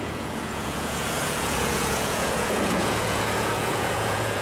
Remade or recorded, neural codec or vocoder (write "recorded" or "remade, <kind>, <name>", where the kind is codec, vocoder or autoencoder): remade, vocoder, Vocos